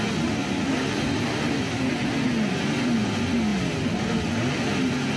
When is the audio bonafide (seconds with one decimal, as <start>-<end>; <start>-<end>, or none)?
0.0-5.2